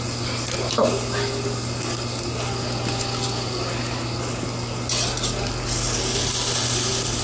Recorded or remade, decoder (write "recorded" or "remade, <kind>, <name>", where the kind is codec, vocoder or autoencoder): recorded